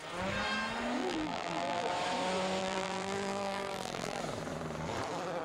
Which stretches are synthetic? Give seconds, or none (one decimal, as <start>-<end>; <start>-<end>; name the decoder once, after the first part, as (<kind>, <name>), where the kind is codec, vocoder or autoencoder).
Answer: 1.0-1.9 (vocoder, BigVGAN v2); 2.6-4.2